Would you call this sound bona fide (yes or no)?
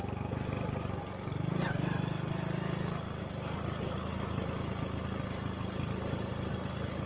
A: yes